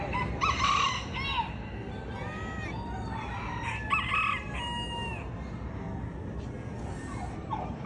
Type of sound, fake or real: real